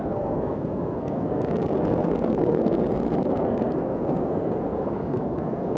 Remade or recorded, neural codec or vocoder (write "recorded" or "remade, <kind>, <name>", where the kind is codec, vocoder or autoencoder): remade, codec, SNAC